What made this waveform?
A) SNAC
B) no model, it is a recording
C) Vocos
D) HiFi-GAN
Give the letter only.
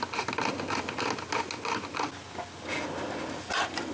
B